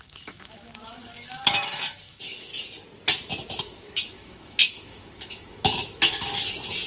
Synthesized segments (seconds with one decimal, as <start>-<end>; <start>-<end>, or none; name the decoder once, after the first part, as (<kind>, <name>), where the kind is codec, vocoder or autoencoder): 0.0-2.5 (autoencoder, DAC-VAE); 3.6-6.4